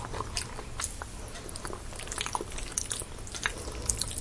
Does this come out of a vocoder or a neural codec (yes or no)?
yes